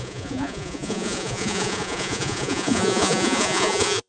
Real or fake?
fake